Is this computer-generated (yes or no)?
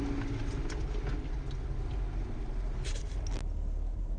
no